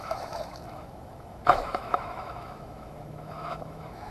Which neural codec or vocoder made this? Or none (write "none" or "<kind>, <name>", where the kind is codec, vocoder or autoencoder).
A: autoencoder, DAC-VAE